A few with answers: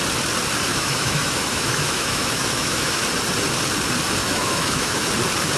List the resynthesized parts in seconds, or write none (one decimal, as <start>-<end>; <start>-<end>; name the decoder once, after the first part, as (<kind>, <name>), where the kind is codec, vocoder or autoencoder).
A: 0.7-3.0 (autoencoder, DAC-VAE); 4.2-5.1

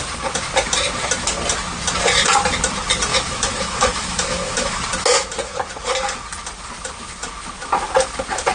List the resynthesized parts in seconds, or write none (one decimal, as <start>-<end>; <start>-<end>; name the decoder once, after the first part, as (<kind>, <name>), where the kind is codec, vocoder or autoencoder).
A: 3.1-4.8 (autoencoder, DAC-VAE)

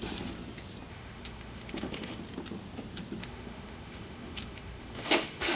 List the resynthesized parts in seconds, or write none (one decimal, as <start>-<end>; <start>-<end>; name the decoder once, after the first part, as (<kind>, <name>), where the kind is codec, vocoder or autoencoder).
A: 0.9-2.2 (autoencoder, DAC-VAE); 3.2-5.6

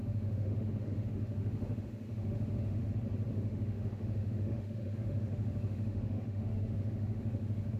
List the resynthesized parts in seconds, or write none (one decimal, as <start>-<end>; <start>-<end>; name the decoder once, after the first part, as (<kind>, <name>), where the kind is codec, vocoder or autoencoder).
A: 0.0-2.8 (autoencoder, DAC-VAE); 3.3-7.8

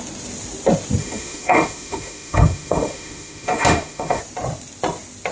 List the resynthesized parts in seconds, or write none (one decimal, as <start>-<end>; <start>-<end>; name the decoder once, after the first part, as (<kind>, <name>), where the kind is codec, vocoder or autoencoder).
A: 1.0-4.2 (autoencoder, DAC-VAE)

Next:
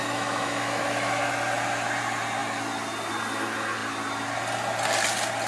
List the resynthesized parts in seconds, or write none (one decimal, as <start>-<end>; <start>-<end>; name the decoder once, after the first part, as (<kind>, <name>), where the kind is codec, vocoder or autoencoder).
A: 0.0-1.3 (autoencoder, DAC-VAE)

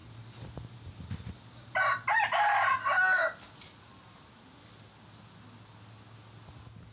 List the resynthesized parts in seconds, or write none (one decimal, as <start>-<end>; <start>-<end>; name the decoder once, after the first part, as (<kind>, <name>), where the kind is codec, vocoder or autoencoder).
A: none